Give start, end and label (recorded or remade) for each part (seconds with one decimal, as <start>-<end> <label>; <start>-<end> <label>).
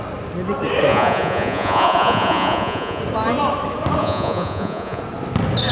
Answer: 0.0-0.9 recorded; 0.9-3.0 remade; 3.0-4.0 recorded; 4.0-5.0 remade; 5.0-5.7 recorded